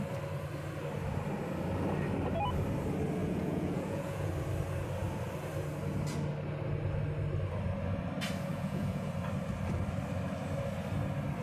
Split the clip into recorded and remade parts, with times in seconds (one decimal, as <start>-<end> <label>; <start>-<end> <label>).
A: 0.0-3.2 recorded; 3.2-4.3 remade; 4.3-8.5 recorded; 8.5-9.1 remade; 9.1-11.4 recorded